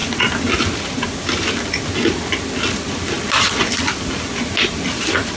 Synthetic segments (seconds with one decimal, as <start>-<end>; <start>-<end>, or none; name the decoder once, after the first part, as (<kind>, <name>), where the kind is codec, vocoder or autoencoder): none